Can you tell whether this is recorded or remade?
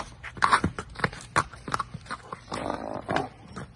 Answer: remade